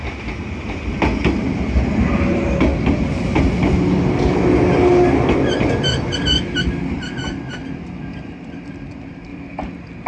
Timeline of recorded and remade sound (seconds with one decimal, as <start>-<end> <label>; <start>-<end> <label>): 0.0-10.1 recorded